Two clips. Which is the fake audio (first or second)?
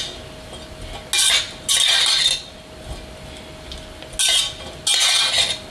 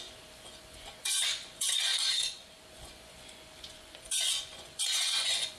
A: second